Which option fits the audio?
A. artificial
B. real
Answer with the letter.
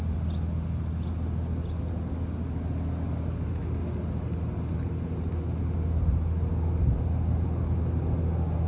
B